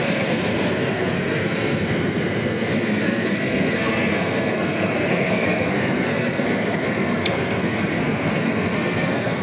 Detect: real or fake fake